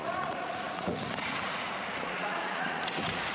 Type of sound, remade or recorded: remade